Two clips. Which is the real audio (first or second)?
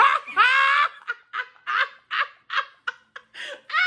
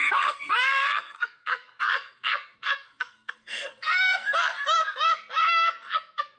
first